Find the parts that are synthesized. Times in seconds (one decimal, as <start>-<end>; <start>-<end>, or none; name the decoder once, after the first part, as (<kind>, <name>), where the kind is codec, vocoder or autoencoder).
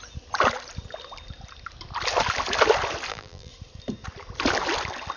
3.1-3.5 (vocoder, BigVGAN v2)